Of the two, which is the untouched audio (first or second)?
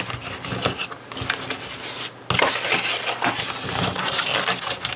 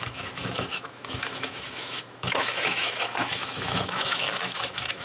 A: first